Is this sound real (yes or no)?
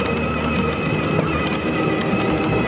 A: yes